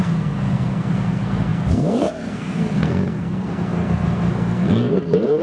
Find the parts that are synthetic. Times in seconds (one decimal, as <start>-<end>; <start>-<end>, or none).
0.0-5.4